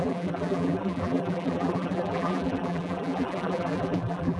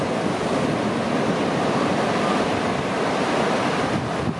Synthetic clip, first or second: first